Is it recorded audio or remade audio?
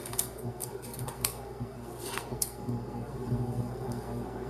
remade